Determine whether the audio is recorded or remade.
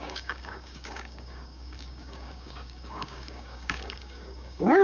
remade